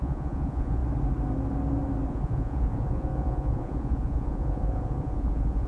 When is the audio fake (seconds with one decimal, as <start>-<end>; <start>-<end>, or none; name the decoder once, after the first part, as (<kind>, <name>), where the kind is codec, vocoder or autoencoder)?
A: 0.0-0.8 (vocoder, Vocos); 2.1-5.7